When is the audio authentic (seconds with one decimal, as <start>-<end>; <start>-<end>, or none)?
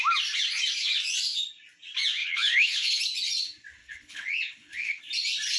0.0-2.2; 3.0-3.8; 5.0-5.6